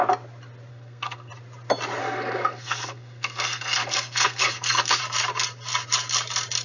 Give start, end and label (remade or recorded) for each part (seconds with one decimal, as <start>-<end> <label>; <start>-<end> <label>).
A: 0.0-0.7 recorded; 0.7-1.3 remade; 1.3-2.0 recorded; 2.0-5.0 remade; 5.0-6.6 recorded